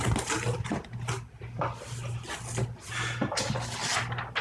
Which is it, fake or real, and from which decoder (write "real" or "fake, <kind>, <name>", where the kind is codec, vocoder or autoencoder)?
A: real